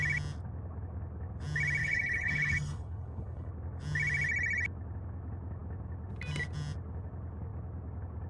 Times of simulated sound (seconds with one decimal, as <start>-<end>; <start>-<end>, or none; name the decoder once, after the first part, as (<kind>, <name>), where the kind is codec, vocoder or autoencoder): 1.8-3.5 (codec, HILCodec)